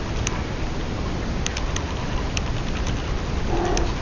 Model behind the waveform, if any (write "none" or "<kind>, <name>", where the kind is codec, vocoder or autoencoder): none